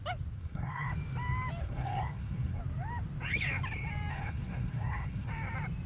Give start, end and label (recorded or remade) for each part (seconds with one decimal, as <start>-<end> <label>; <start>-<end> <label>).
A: 0.0-0.4 recorded; 0.4-0.9 remade; 0.9-1.6 recorded; 1.6-2.6 remade; 2.6-4.1 recorded; 4.1-5.3 remade; 5.3-5.9 recorded